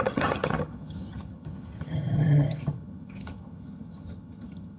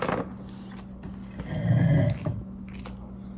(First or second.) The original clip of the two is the second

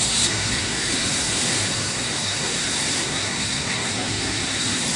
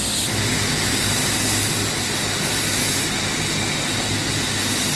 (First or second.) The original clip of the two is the second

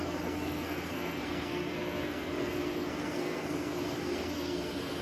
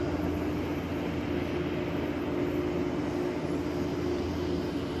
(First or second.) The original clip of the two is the second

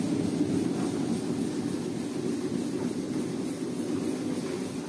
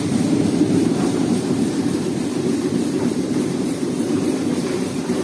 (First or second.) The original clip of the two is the first